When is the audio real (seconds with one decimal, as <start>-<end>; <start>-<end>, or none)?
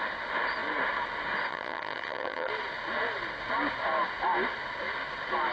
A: 0.0-1.5; 2.5-5.5